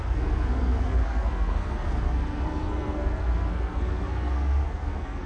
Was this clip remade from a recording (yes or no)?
yes